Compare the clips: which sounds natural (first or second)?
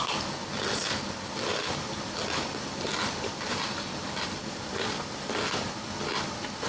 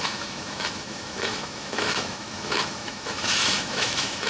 first